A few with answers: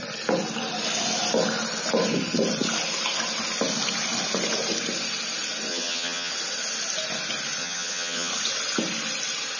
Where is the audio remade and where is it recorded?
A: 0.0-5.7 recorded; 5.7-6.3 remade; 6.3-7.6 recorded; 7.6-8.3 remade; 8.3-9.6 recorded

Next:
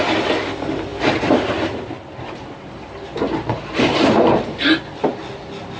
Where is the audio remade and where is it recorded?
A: 0.0-5.8 recorded

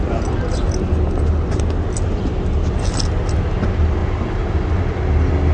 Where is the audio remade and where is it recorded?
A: 0.0-5.5 recorded

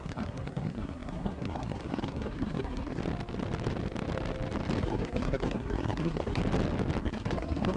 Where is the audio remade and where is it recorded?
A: 0.0-3.0 remade; 3.0-4.8 recorded; 4.8-6.4 remade; 6.4-7.0 recorded; 7.0-7.8 remade

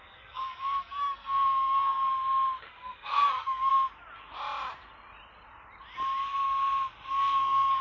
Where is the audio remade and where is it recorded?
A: 0.0-2.1 remade; 2.1-2.6 recorded; 2.6-3.7 remade; 3.7-7.1 recorded; 7.1-7.8 remade

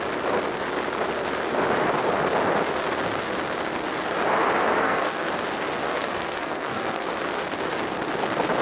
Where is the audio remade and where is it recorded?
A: 0.0-4.8 recorded; 4.8-5.3 remade; 5.3-5.8 recorded; 5.8-7.1 remade; 7.1-8.6 recorded